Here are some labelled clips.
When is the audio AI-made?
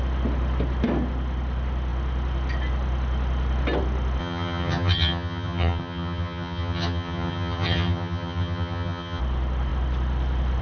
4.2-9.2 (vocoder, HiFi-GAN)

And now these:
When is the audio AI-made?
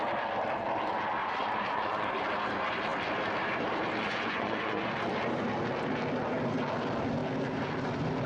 1.2-2.2 (vocoder, Vocos); 4.0-4.9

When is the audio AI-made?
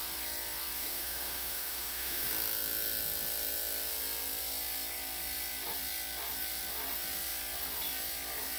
0.8-2.3 (autoencoder, DAC-VAE)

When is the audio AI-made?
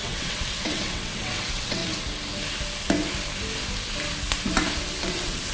0.0-1.8 (vocoder, WaveNeXt); 5.1-5.5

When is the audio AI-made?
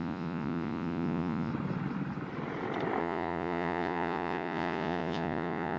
0.0-1.5 (vocoder, Vocos); 3.0-5.8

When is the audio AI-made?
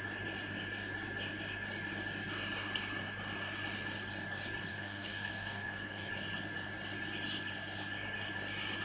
4.7-6.1 (codec, SNAC)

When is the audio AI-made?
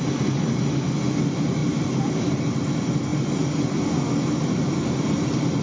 none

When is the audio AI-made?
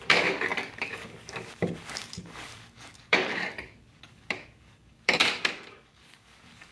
0.0-5.2 (codec, DAC); 5.7-6.7